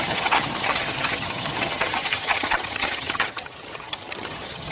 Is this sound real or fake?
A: fake